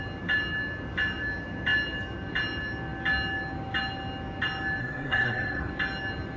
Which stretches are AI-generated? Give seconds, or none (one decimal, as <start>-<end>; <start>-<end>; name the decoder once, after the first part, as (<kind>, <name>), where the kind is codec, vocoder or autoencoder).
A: 4.8-5.7 (codec, SNAC)